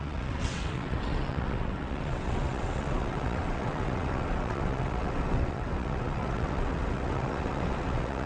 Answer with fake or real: fake